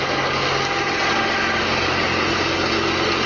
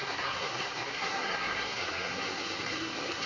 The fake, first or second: second